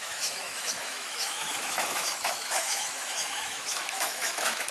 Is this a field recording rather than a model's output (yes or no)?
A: no